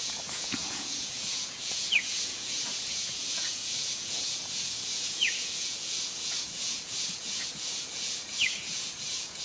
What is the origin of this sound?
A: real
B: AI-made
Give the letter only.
B